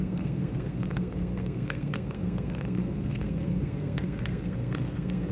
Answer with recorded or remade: remade